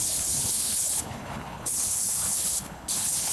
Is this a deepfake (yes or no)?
yes